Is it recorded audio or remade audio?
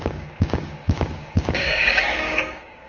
remade